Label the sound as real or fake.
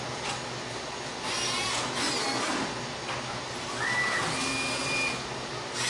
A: real